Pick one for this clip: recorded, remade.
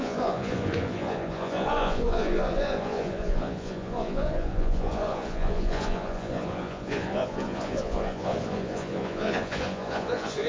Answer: remade